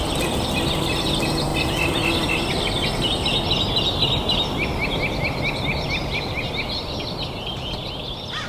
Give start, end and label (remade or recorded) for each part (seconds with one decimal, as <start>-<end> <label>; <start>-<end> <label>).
0.0-8.5 recorded